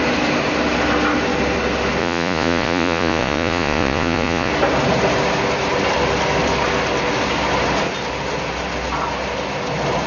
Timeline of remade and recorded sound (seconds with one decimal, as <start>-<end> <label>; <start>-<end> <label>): 0.0-2.0 recorded; 2.0-4.5 remade; 4.5-10.1 recorded